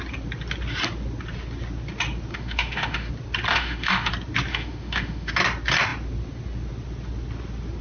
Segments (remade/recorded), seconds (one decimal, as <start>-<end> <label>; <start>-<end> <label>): 0.0-2.3 recorded; 2.3-3.1 remade; 3.1-3.5 recorded; 3.5-4.1 remade; 4.1-4.5 recorded; 4.5-5.3 remade; 5.3-7.8 recorded